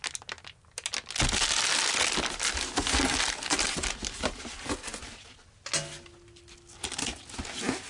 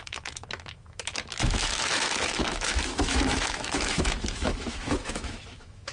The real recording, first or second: first